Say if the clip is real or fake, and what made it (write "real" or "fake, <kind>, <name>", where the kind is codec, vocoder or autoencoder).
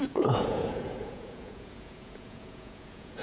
fake, vocoder, Vocos